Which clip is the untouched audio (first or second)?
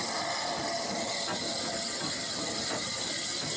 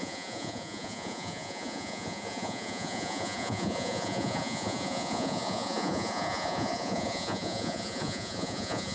first